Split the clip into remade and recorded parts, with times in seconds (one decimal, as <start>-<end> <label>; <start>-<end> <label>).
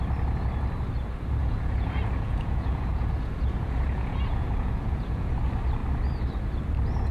0.0-1.4 recorded; 1.4-5.3 remade; 5.3-7.1 recorded